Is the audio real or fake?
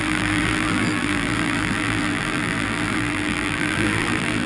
fake